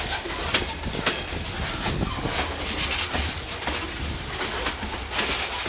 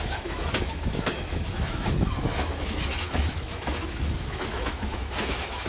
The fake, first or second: second